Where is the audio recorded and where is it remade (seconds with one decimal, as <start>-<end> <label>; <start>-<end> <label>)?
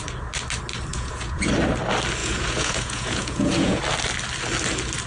0.0-0.9 recorded; 0.9-1.5 remade; 1.5-2.2 recorded; 2.2-3.8 remade; 3.8-5.1 recorded